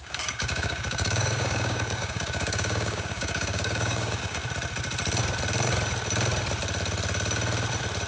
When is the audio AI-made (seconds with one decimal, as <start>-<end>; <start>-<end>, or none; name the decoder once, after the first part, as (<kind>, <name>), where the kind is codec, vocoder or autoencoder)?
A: 0.0-4.4 (codec, DAC)